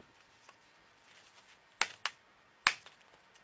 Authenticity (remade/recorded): recorded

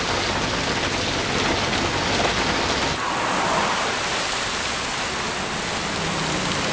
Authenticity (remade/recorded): recorded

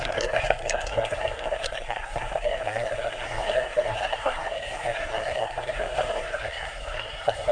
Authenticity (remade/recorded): remade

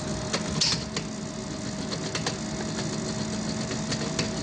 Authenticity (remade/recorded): recorded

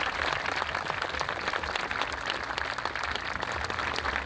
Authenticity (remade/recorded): recorded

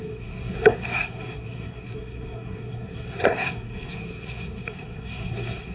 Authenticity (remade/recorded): remade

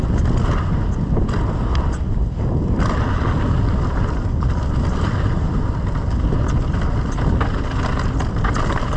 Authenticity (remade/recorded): recorded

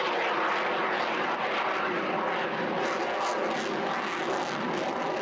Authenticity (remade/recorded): recorded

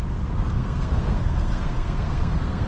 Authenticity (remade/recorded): remade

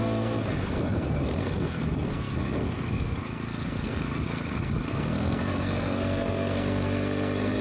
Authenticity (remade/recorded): remade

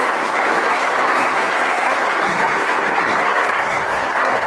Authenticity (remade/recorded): remade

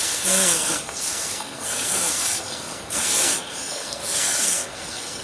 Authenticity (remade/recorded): remade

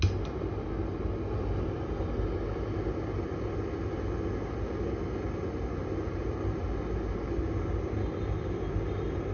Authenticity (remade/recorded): recorded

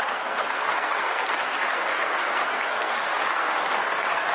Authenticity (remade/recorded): remade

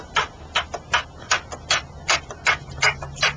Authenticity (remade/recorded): recorded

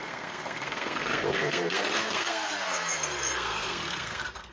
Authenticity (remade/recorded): remade